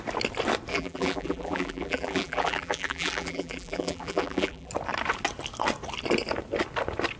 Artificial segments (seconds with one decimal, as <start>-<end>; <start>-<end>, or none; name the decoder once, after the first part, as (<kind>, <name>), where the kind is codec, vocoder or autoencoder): 0.7-4.7 (vocoder, BigVGAN v2)